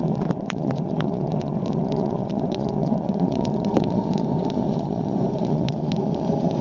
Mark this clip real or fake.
fake